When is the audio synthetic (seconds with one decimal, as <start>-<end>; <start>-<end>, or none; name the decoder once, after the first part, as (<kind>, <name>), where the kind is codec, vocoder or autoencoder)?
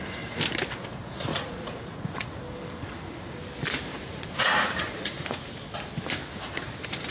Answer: 1.3-2.4 (vocoder, Vocos); 3.9-5.5